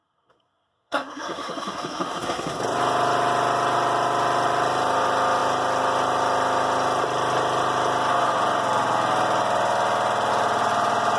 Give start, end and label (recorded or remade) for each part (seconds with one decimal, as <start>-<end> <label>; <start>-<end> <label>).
0.0-2.6 remade; 2.6-11.2 recorded